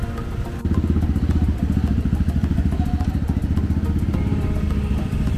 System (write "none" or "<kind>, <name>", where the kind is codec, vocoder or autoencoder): none